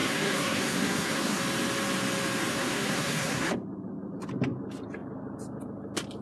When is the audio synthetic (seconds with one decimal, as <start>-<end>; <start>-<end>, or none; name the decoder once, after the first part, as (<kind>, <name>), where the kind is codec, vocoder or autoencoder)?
0.0-1.4 (codec, SNAC); 2.5-3.5